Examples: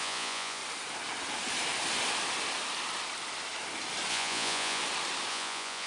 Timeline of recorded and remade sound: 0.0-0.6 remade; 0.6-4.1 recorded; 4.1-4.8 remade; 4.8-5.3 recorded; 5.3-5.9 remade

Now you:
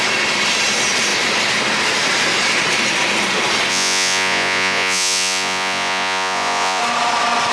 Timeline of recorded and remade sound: 0.0-3.7 recorded; 3.7-6.8 remade; 6.8-7.5 recorded

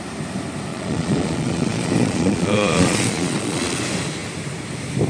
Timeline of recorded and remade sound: 0.0-0.7 recorded; 0.7-3.8 remade; 3.8-5.1 recorded

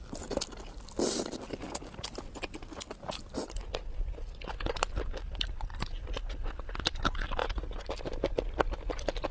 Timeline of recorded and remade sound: 0.0-7.4 recorded; 7.4-7.9 remade; 7.9-9.3 recorded

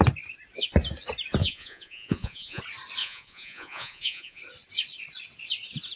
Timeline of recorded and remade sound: 0.0-1.4 recorded; 1.4-2.6 remade; 2.6-3.0 recorded; 3.0-4.4 remade; 4.4-6.0 recorded

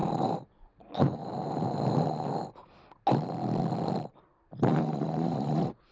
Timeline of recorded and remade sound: 0.0-0.7 recorded; 0.7-1.2 remade; 1.2-4.7 recorded; 4.7-5.9 remade

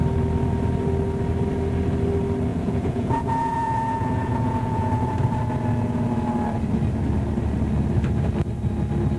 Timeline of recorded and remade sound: 0.0-2.5 recorded; 2.5-4.9 remade; 4.9-9.2 recorded

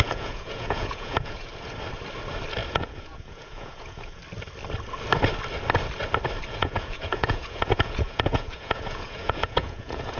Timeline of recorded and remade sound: 0.0-1.5 remade; 1.5-2.7 recorded; 2.7-4.2 remade; 4.2-6.5 recorded; 6.5-10.2 remade